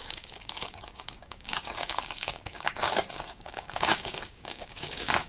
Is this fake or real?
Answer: fake